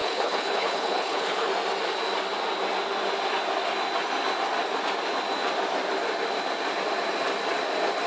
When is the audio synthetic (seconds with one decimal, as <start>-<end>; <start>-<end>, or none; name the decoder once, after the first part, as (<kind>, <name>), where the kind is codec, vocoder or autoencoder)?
0.0-1.5 (codec, HILCodec)